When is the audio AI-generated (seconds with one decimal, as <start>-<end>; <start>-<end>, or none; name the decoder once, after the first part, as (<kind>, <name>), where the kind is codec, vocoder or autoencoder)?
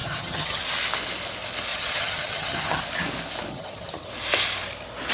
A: 0.0-0.6 (vocoder, HiFi-GAN); 1.7-2.8; 3.5-4.1